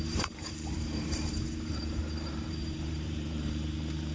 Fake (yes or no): yes